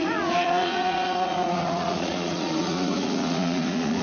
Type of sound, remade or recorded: remade